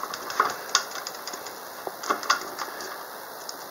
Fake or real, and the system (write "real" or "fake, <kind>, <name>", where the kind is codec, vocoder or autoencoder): real